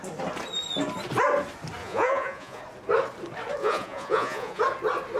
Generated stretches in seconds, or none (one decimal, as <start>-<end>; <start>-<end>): 1.8-2.6; 3.6-4.6